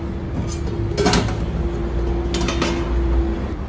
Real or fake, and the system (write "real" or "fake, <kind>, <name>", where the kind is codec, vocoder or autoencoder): real